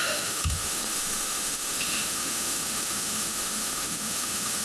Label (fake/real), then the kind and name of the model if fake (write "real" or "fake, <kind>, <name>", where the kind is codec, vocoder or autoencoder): fake, autoencoder, DAC-VAE